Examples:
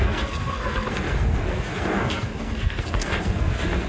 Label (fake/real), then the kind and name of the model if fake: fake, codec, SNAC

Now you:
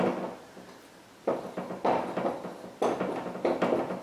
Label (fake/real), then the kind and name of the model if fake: real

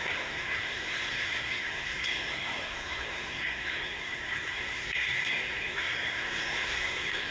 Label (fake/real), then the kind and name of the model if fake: fake, codec, SNAC